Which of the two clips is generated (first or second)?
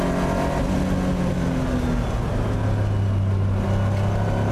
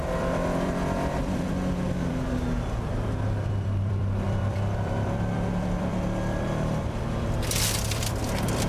second